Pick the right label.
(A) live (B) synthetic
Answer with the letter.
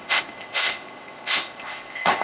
B